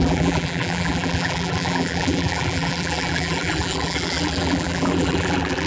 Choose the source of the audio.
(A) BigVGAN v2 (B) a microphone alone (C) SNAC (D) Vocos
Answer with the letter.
A